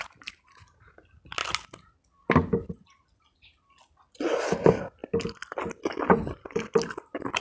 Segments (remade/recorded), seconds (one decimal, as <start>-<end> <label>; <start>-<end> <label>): 0.0-7.4 recorded